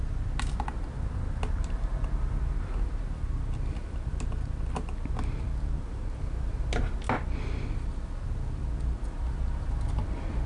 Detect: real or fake real